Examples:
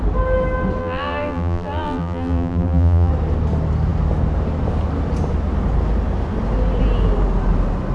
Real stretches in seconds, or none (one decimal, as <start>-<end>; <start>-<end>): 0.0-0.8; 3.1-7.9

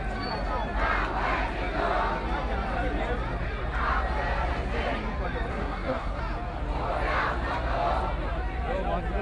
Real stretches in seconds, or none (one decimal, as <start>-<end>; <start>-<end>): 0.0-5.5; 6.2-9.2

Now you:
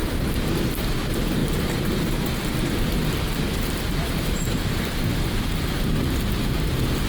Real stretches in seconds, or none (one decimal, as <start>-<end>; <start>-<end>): 0.6-1.4; 5.7-7.1

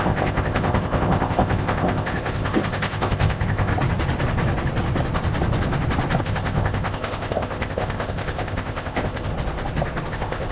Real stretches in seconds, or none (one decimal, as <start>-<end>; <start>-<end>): 3.7-6.2; 9.3-10.1

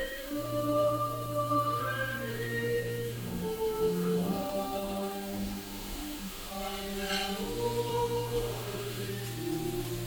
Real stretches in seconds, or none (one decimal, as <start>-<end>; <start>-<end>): 1.8-2.3; 6.5-7.9; 9.1-10.1

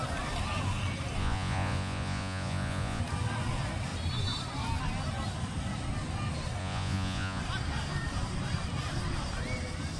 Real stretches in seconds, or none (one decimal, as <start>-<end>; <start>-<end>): 0.0-1.2; 3.0-6.6; 7.4-10.0

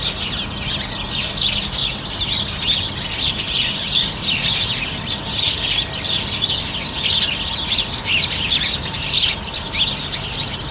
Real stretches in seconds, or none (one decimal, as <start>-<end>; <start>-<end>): 0.0-10.7

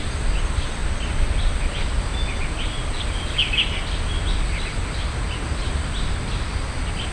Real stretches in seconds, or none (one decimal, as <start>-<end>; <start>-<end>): 0.0-7.1